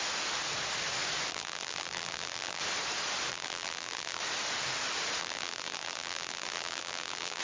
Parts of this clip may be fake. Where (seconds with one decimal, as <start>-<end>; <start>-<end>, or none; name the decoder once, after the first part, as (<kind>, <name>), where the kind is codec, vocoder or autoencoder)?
1.3-2.6 (vocoder, BigVGAN v2); 3.3-4.2; 5.2-7.4

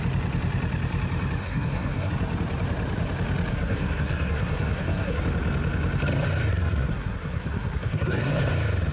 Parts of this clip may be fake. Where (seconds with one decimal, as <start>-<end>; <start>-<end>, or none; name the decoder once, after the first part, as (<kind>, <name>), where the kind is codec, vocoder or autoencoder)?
1.4-2.1 (codec, SNAC); 3.5-5.2; 6.5-8.3

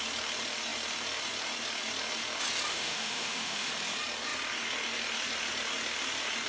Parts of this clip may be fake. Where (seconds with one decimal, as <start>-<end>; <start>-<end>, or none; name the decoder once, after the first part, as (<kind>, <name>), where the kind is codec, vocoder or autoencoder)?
2.7-3.7 (autoencoder, DAC-VAE)

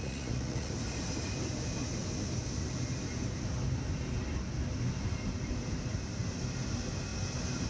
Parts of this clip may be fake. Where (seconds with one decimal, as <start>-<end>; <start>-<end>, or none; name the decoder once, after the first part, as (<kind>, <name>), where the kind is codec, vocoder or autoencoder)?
0.0-0.7 (vocoder, Vocos)

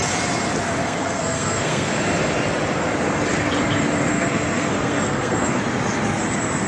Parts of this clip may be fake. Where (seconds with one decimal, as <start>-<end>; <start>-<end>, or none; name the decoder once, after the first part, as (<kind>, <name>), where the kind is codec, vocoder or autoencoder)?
0.8-1.9 (codec, SNAC); 4.1-5.6

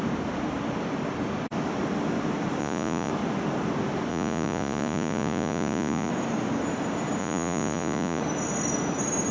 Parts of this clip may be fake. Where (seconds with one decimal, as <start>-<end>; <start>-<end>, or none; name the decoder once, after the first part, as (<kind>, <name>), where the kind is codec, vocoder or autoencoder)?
2.6-3.1 (vocoder, Vocos); 4.1-6.1; 7.2-8.2

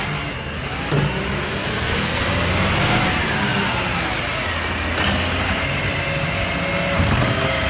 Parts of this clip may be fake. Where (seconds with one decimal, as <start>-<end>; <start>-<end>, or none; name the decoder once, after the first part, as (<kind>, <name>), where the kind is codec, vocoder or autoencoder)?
1.6-2.2 (codec, SNAC)